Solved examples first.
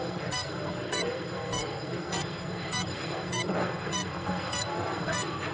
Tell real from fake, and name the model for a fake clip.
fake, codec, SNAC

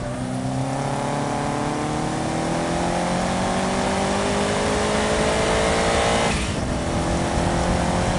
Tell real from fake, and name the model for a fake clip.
real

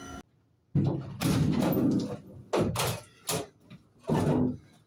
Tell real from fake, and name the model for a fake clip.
real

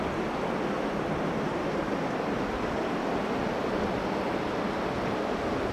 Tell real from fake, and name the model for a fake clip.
real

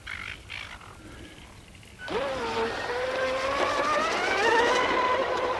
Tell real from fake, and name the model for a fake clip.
real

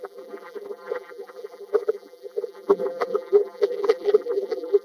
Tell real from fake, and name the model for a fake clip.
fake, vocoder, BigVGAN v2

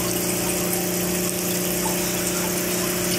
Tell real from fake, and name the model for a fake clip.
real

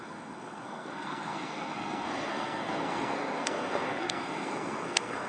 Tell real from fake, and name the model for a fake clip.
fake, codec, SNAC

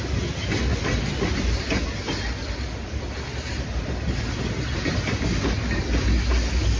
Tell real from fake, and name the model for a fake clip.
real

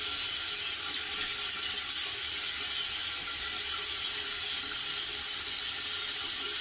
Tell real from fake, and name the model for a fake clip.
real